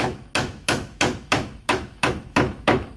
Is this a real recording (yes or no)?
no